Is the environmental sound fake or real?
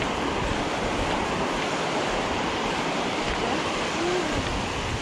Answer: real